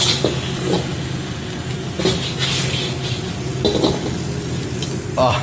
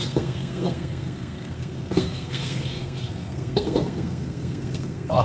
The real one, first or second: first